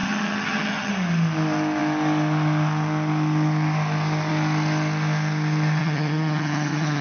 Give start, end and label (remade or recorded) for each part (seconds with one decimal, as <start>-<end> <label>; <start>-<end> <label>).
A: 0.0-0.9 remade; 0.9-5.8 recorded; 5.8-7.0 remade